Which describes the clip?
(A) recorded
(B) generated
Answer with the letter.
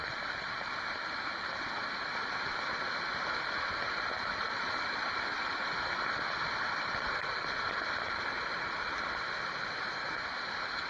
A